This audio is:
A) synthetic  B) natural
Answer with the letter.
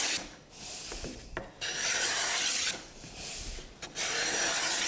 A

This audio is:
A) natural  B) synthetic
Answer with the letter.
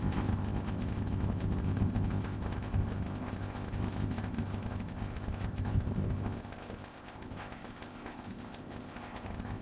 B